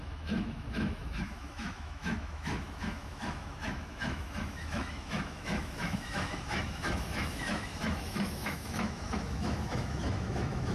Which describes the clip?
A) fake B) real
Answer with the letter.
A